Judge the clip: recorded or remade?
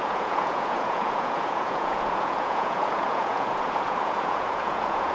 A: remade